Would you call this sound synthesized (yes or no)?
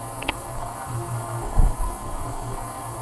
yes